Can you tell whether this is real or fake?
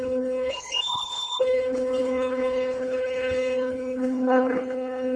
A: fake